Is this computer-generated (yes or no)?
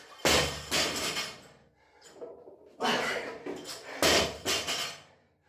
no